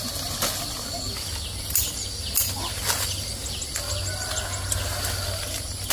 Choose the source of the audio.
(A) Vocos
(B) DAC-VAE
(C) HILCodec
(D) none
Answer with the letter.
D